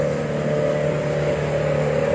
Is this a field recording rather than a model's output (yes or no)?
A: yes